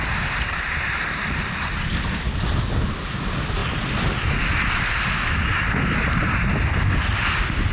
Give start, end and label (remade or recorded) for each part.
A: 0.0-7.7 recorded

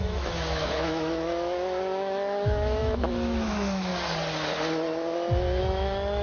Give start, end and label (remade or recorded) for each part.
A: 0.0-3.9 remade; 3.9-5.6 recorded; 5.6-6.2 remade